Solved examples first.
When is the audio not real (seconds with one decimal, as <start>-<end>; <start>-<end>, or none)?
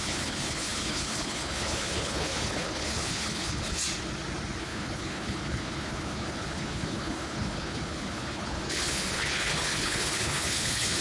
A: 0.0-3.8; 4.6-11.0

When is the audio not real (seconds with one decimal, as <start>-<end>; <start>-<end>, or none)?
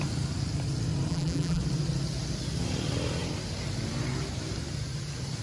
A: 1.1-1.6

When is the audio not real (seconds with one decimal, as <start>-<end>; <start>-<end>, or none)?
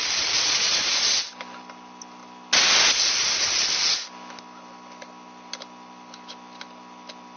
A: none